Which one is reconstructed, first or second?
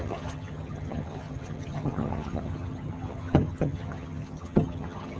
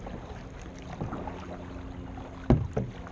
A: first